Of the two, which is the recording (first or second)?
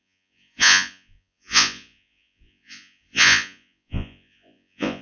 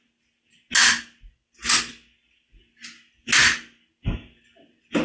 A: second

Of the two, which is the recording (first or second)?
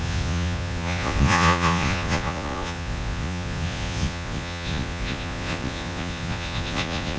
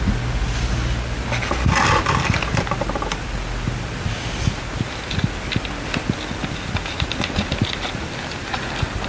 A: second